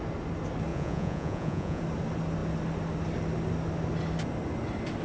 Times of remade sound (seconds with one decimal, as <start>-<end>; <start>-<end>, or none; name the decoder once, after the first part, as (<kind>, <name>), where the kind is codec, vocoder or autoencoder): 0.7-1.8 (vocoder, Vocos)

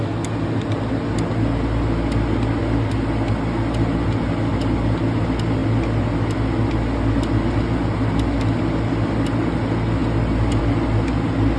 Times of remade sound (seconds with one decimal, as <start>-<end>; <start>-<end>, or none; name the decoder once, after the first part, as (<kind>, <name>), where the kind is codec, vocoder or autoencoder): none

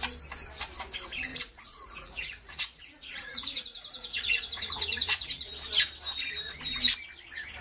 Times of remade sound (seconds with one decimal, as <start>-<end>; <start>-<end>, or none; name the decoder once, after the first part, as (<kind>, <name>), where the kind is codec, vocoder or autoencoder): 1.3-5.5 (vocoder, Vocos)

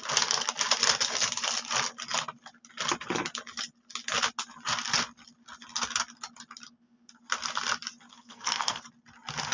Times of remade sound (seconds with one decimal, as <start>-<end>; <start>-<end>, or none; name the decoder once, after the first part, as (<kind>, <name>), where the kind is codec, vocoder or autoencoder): 8.1-8.8 (codec, SNAC)

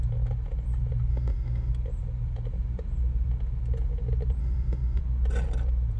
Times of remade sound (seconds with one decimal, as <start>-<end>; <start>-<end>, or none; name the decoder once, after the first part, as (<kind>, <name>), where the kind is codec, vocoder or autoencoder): 1.1-1.7 (autoencoder, DAC-VAE); 4.4-5.0

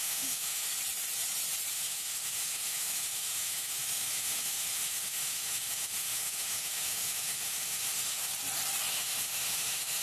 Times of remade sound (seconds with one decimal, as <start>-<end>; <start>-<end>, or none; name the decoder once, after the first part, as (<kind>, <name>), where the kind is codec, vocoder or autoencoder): 0.0-0.7 (autoencoder, DAC-VAE); 1.7-8.3; 8.9-10.0